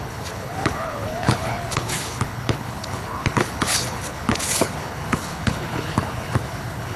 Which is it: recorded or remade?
remade